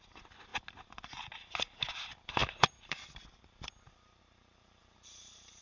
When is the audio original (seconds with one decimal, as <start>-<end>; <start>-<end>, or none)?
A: 0.5-1.9